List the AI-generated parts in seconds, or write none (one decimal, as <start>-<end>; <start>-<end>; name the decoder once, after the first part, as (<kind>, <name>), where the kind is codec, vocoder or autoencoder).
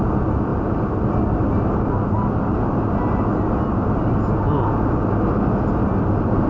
none